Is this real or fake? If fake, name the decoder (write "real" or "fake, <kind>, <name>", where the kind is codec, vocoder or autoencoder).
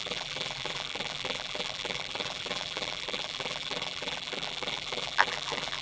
fake, vocoder, BigVGAN v2